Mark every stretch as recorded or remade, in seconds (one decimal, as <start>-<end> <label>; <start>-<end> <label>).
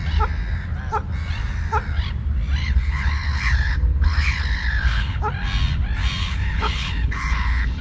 0.0-2.6 recorded; 2.6-5.2 remade; 5.2-6.2 recorded; 6.2-7.8 remade